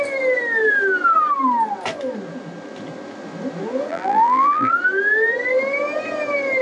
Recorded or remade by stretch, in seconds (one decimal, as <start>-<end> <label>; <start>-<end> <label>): 0.0-3.9 recorded; 3.9-4.7 remade; 4.7-6.6 recorded